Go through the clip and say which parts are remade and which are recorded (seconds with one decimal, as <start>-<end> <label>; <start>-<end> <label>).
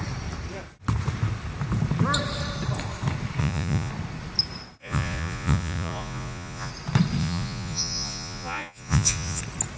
0.0-3.4 recorded; 3.4-3.9 remade; 3.9-4.8 recorded; 4.8-6.7 remade; 6.7-7.2 recorded; 7.2-9.4 remade; 9.4-9.8 recorded